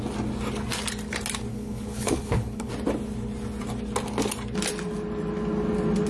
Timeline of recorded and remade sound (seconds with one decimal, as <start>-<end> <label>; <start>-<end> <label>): 0.0-1.5 recorded; 1.5-2.7 remade; 2.7-6.1 recorded